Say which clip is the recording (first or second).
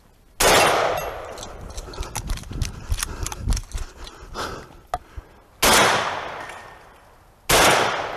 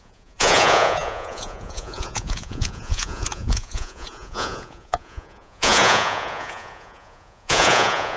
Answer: first